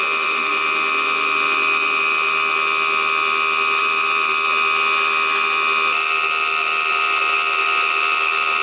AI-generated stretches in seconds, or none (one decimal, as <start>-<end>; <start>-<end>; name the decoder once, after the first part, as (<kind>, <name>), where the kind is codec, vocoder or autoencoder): 0.0-0.5 (vocoder, BigVGAN v2); 3.8-4.5; 6.9-8.6